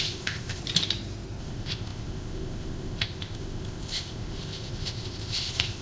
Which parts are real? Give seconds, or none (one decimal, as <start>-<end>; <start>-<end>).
0.6-1.4